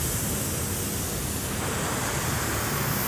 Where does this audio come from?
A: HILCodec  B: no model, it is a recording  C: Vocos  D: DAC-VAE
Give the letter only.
B